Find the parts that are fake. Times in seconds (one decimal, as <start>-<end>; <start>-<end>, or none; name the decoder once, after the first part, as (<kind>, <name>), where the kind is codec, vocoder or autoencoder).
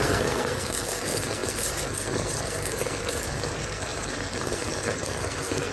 0.0-5.7 (codec, SNAC)